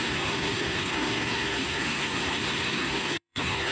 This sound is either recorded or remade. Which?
remade